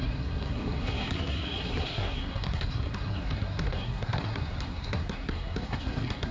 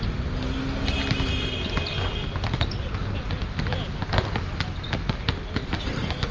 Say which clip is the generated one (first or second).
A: first